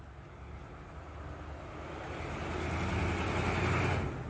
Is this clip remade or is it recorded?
recorded